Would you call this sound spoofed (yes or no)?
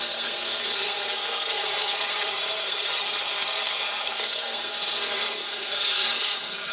yes